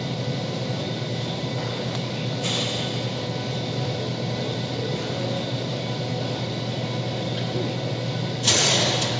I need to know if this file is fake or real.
real